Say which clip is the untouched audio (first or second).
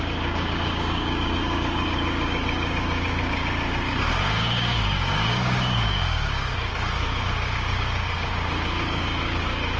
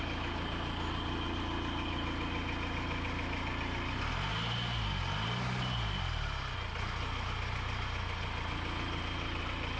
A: second